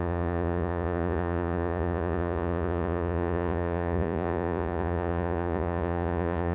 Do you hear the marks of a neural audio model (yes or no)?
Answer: yes